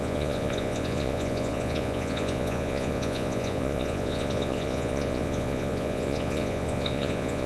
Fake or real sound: fake